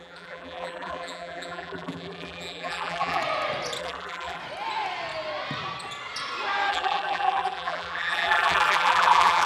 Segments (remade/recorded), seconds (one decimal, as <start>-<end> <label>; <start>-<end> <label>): 0.0-3.2 remade; 3.2-3.8 recorded; 3.8-4.4 remade; 4.4-6.7 recorded; 6.7-9.5 remade